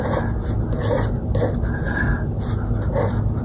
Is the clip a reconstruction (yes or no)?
no